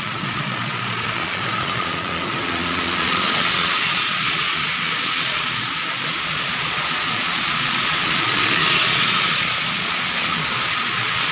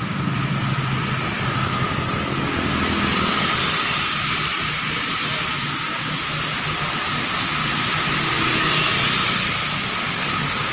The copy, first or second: first